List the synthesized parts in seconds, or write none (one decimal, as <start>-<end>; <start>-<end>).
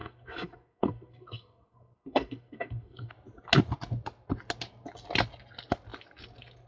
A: 0.0-3.1